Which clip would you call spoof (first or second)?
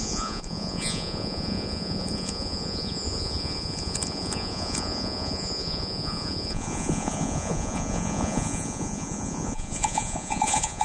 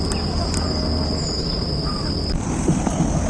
first